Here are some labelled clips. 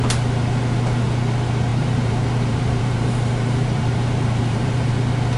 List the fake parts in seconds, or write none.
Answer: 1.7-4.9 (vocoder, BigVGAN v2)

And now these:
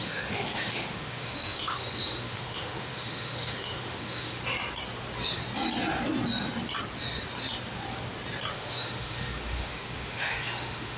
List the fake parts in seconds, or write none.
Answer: 0.0-4.4 (autoencoder, DAC-VAE); 8.5-11.0

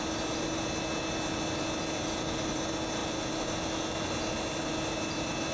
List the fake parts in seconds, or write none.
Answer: none

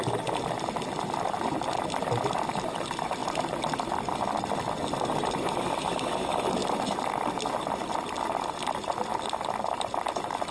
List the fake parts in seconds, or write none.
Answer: 6.6-7.4 (vocoder, BigVGAN v2); 9.1-9.7